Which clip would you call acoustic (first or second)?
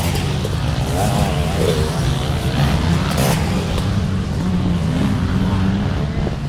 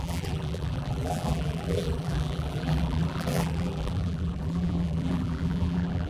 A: first